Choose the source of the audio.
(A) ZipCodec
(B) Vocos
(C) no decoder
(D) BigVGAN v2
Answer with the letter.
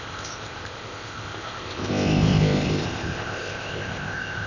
A